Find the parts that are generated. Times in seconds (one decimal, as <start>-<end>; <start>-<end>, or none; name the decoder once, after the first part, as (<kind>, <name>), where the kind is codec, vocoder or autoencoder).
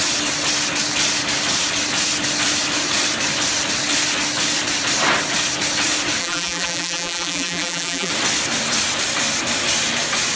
6.2-8.1 (vocoder, BigVGAN v2)